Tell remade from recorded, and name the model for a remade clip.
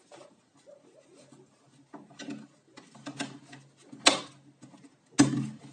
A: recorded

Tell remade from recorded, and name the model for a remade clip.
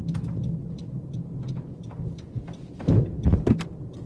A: recorded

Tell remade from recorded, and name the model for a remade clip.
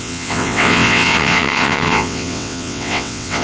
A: remade, vocoder, WaveNeXt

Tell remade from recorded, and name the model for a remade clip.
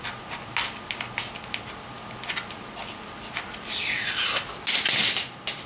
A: recorded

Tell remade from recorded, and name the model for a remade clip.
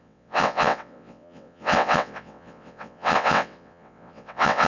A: remade, vocoder, WaveNeXt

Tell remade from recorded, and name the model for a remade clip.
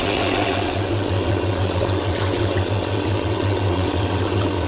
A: remade, vocoder, WaveNeXt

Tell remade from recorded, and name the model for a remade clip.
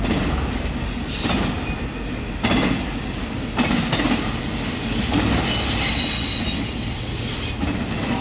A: recorded